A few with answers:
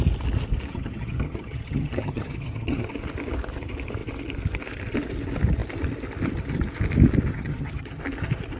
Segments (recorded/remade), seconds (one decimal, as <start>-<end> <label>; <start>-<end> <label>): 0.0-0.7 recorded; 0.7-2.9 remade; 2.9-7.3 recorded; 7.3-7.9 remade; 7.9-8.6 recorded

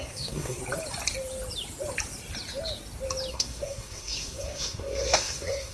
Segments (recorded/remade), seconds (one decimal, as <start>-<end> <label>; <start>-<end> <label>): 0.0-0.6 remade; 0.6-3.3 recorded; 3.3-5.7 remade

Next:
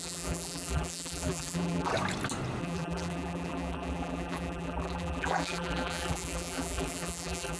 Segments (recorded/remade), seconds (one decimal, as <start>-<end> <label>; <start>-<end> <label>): 0.0-1.9 remade; 1.9-2.6 recorded; 2.6-7.6 remade